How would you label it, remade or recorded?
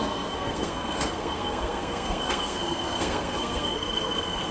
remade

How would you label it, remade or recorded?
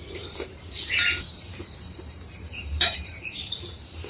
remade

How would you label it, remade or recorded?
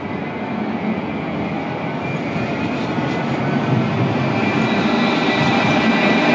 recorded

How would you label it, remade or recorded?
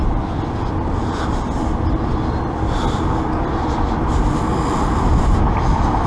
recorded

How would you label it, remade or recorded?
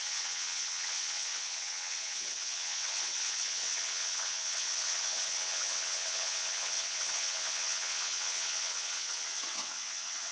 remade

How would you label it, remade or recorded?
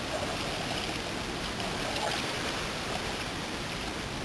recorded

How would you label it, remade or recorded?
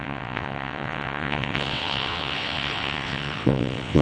remade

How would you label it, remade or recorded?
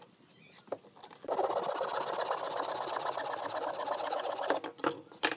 recorded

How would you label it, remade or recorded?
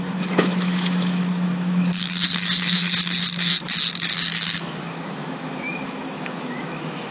remade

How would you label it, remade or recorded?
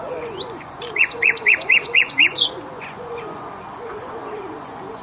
remade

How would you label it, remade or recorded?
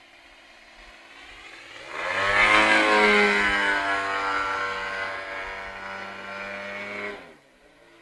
recorded